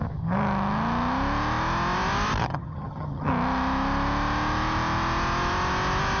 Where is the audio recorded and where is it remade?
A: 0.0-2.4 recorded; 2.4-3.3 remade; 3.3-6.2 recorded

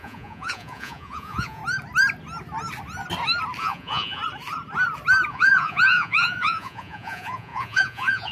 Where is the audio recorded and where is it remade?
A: 0.0-1.6 remade; 1.6-3.6 recorded; 3.6-4.2 remade; 4.2-5.3 recorded; 5.3-8.3 remade

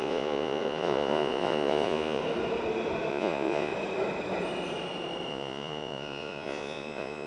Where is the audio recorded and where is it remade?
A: 0.0-2.2 remade; 2.2-3.1 recorded; 3.1-3.7 remade; 3.7-5.3 recorded; 5.3-7.3 remade

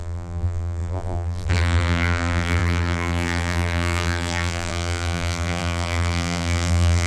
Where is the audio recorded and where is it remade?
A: 0.0-7.1 remade

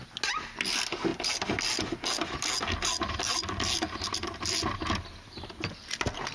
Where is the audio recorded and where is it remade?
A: 0.0-6.3 recorded

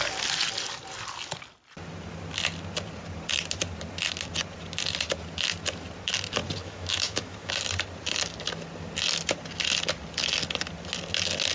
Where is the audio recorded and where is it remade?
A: 0.0-6.6 recorded; 6.6-7.5 remade; 7.5-11.5 recorded